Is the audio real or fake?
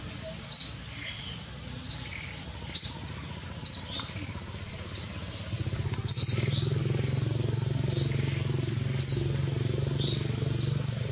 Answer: real